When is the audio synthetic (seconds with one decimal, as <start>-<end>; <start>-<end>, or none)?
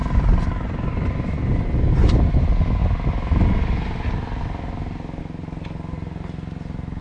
none